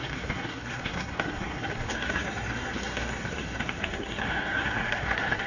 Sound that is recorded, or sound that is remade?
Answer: remade